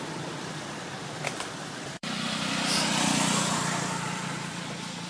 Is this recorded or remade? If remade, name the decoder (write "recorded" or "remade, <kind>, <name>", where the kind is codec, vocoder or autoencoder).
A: remade, vocoder, BigVGAN v2